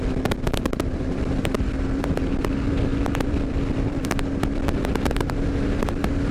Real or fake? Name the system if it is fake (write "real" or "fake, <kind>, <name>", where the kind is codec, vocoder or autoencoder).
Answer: fake, vocoder, BigVGAN v2